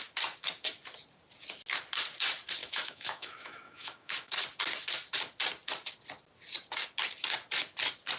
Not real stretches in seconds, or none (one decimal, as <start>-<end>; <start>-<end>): 2.6-4.3

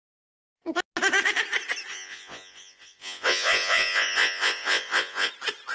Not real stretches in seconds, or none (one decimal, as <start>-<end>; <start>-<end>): 1.9-5.3

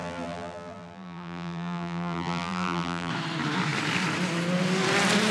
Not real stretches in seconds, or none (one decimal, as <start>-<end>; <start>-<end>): 0.0-3.1

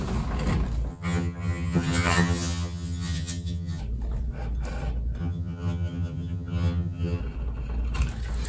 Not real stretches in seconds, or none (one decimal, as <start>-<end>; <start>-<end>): 0.9-3.8; 5.2-7.2